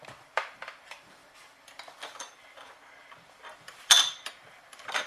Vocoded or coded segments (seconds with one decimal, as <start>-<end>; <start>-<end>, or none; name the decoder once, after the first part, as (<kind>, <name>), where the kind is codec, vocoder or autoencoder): 0.0-5.1 (vocoder, BigVGAN v2)